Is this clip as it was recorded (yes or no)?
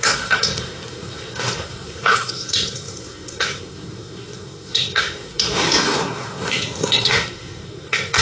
no